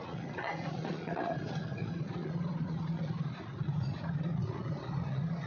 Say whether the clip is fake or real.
fake